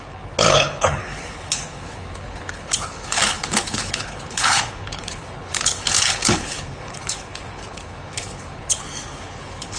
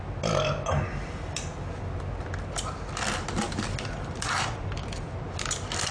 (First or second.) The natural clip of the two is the second